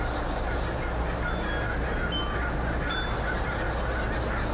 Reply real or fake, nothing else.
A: real